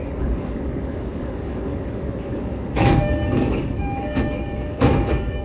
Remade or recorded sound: remade